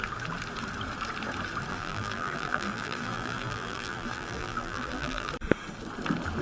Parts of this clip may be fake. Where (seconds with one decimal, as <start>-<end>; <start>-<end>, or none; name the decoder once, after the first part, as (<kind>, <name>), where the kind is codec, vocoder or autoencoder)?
1.7-5.3 (vocoder, BigVGAN v2)